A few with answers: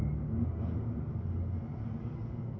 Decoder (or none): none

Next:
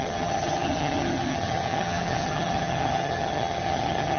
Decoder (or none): vocoder, HiFi-GAN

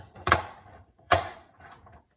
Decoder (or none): vocoder, Vocos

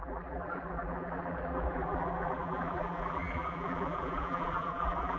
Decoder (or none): vocoder, BigVGAN v2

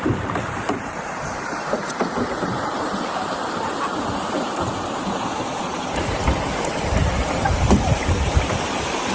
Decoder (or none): vocoder, BigVGAN v2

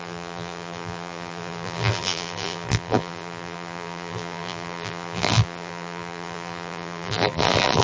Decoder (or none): vocoder, BigVGAN v2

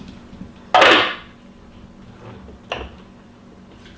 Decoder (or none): none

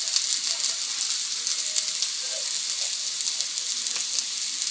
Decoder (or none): none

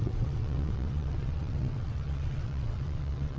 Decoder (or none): vocoder, WaveNeXt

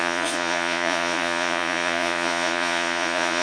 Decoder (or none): vocoder, Vocos